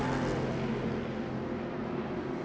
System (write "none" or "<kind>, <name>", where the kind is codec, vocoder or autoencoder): none